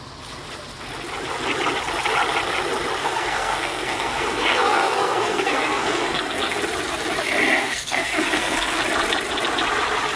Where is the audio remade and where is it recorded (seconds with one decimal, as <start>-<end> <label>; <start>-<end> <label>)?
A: 0.0-3.0 recorded; 3.0-6.6 remade; 6.6-7.6 recorded; 7.6-8.8 remade; 8.8-10.2 recorded